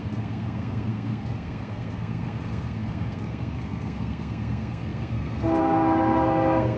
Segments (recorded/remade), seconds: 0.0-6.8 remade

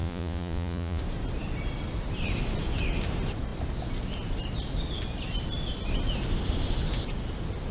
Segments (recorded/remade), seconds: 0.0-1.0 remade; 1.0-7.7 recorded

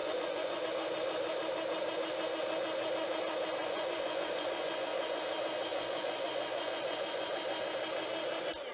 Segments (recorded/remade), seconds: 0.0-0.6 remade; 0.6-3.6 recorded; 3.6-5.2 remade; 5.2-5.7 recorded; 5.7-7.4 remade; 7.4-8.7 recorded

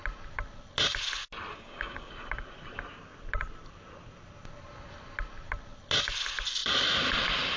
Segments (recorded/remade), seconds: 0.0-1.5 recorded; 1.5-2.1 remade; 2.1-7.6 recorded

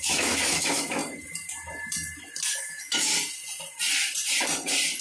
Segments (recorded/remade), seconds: 0.0-1.0 remade; 1.0-2.5 recorded; 2.5-3.1 remade; 3.1-5.0 recorded